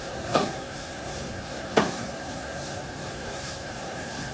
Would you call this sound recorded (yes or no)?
no